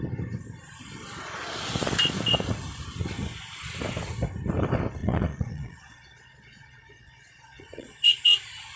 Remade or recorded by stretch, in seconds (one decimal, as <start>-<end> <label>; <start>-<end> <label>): 0.0-5.0 recorded; 5.0-8.2 remade; 8.2-8.8 recorded